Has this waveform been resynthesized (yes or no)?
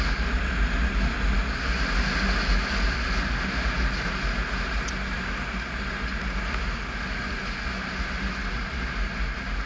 no